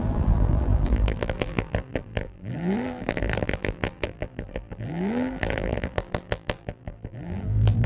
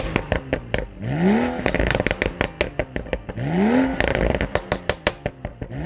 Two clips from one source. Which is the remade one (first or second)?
first